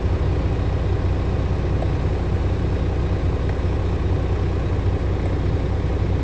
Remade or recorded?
recorded